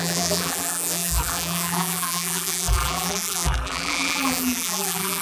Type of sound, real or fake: fake